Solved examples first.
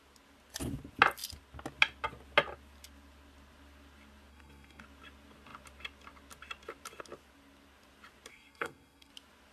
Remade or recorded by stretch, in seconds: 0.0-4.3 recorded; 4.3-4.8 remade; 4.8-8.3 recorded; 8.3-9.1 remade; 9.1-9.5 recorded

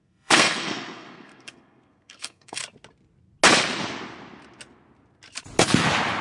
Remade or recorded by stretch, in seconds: 0.0-2.6 remade; 2.6-6.2 recorded